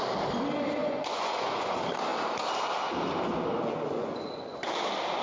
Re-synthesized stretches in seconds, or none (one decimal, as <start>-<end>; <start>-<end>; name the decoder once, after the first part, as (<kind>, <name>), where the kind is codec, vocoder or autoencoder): 0.8-1.7 (vocoder, Vocos); 4.0-4.7